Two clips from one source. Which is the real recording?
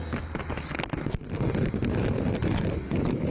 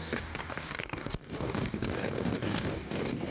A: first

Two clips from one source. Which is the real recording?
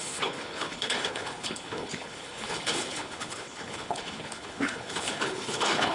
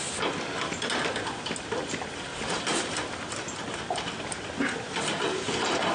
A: second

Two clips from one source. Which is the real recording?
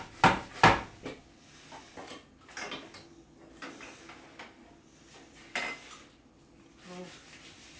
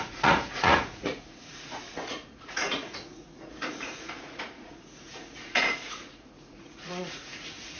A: first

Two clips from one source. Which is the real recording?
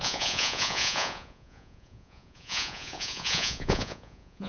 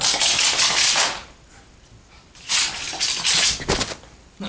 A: second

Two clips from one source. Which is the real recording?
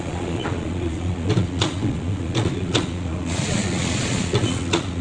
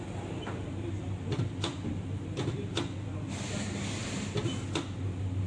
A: second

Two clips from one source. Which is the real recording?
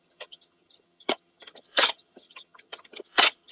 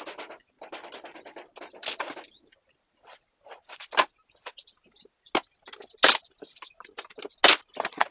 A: second